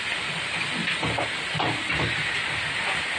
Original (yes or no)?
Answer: yes